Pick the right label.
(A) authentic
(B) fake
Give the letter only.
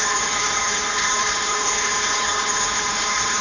B